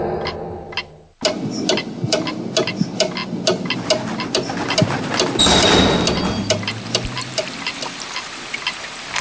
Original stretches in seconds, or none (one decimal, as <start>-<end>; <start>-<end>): 0.0-9.2